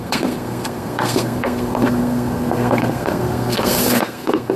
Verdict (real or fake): fake